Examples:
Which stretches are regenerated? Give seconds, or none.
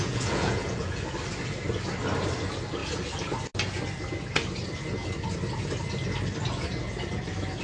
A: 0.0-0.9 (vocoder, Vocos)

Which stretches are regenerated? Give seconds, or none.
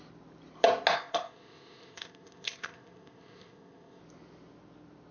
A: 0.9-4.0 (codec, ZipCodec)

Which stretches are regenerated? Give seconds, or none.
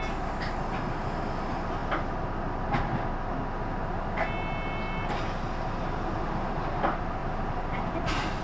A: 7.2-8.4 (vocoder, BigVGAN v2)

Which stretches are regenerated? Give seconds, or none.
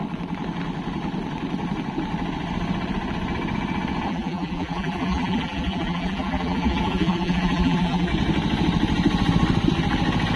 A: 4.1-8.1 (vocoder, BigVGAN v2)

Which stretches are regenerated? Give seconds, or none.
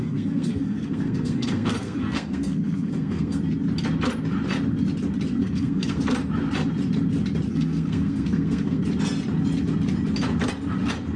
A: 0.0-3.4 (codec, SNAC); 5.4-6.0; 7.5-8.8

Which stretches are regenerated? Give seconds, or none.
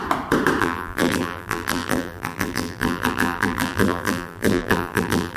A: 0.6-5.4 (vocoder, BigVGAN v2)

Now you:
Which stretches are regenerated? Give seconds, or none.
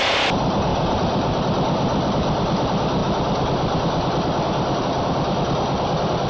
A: none